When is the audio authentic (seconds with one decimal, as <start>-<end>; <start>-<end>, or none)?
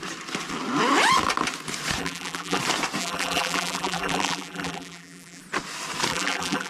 0.0-2.0; 2.6-3.0; 5.4-6.1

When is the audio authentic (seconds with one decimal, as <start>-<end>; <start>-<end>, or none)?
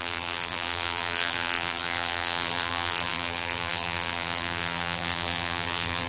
none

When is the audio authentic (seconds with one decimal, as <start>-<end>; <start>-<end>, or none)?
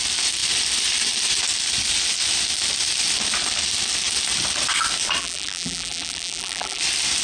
0.0-5.2; 6.8-7.2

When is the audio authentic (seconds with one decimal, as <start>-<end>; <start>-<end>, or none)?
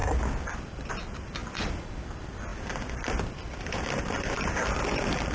0.0-1.4; 1.9-5.3